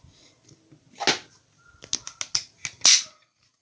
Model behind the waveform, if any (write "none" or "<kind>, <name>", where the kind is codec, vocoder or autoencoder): none